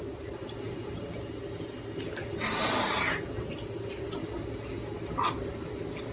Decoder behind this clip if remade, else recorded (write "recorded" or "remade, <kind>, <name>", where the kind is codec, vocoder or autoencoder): recorded